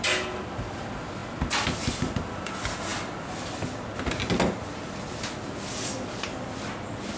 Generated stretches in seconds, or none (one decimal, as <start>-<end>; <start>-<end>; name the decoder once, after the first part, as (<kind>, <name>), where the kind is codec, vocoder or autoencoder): none

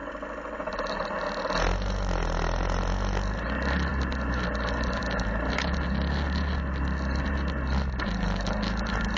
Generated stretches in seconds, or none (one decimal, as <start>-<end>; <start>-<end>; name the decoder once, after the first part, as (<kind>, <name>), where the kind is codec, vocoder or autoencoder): none

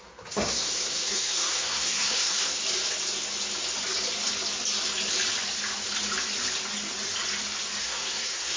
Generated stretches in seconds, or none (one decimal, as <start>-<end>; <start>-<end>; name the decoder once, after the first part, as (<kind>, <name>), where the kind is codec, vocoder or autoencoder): 0.0-2.6 (codec, SNAC); 7.8-8.6

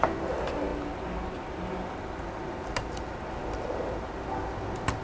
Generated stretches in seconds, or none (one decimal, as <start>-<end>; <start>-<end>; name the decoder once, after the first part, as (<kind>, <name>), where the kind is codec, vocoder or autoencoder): none

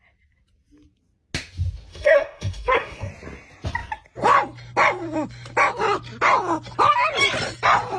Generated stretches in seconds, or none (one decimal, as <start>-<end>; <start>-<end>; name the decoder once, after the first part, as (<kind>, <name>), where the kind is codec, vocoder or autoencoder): 1.9-3.1 (codec, SNAC)

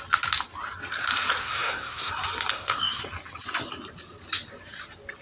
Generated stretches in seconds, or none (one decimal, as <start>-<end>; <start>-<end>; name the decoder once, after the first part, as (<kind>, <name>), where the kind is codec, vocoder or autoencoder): 1.4-2.1 (codec, SNAC); 2.5-3.0

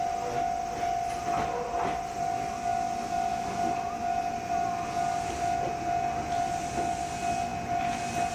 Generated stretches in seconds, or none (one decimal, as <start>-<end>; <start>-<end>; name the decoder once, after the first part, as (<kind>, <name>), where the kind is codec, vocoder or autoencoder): none